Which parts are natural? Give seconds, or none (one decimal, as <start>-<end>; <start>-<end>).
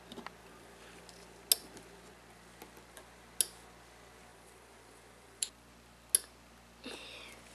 0.0-0.4; 1.0-4.3; 5.7-7.5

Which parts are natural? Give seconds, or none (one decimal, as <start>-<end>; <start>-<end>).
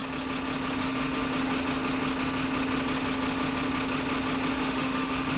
0.0-0.8; 1.3-4.5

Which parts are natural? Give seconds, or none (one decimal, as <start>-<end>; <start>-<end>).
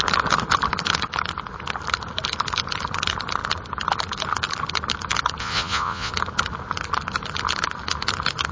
0.0-5.4; 6.1-8.5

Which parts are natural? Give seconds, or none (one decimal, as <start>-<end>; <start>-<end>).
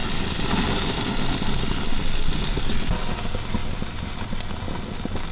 0.0-5.3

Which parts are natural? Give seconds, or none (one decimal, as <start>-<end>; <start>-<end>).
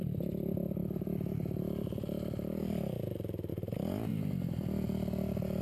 4.1-5.6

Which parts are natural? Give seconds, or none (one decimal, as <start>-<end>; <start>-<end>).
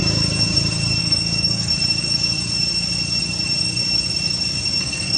0.0-1.0; 1.7-4.8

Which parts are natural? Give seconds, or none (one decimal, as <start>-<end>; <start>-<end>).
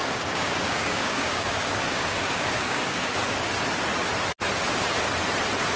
3.5-5.8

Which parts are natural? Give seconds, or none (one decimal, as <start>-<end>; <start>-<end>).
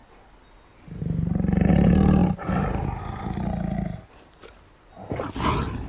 0.0-2.2; 3.0-5.9